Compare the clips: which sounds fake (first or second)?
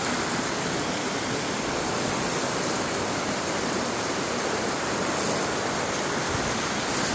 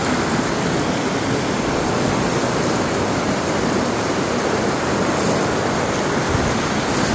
first